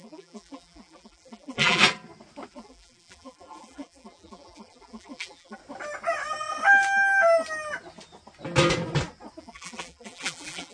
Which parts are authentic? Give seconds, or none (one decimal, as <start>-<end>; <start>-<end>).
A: 1.8-2.5; 5.6-9.4